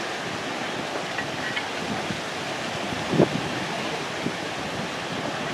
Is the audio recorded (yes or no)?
yes